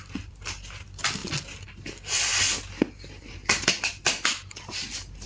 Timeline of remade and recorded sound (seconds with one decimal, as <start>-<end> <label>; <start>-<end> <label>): 0.0-5.3 recorded

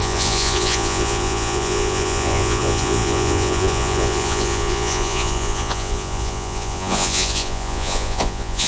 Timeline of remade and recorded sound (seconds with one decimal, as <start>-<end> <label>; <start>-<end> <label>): 0.0-8.7 remade

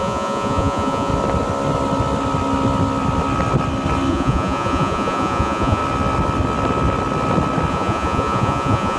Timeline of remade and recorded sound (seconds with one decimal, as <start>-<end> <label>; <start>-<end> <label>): 0.0-1.1 remade; 1.1-4.1 recorded; 4.1-5.8 remade; 5.8-7.7 recorded; 7.7-9.0 remade

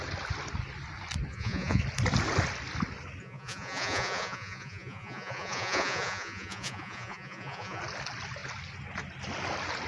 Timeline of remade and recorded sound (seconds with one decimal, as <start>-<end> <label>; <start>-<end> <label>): 0.0-1.3 recorded; 1.3-1.8 remade; 1.8-3.2 recorded; 3.2-7.8 remade; 7.8-9.9 recorded

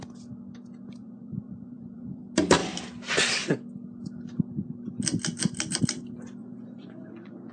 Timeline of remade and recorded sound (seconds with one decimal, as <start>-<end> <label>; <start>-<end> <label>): 0.0-1.0 recorded; 1.0-2.2 remade; 2.2-6.4 recorded; 6.4-7.5 remade

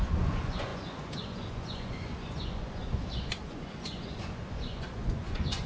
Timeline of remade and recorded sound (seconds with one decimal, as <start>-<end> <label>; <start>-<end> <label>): 0.0-5.7 remade